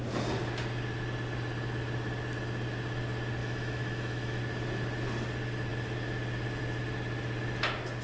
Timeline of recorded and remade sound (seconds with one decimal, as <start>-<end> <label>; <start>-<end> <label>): 0.0-3.4 recorded; 3.4-4.4 remade; 4.4-8.0 recorded